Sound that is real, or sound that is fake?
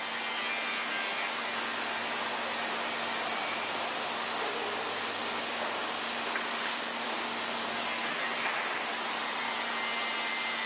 real